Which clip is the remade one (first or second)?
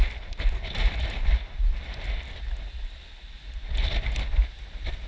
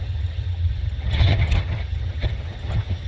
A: second